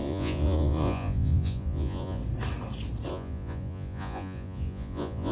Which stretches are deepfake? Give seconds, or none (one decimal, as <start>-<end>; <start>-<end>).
0.0-2.2; 3.1-5.3